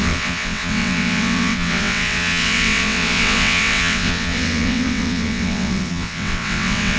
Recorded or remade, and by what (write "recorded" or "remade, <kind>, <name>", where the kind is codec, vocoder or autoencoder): remade, vocoder, WaveNeXt